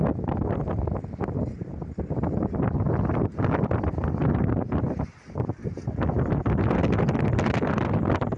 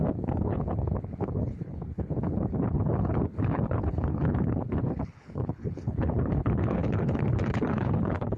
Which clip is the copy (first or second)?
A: second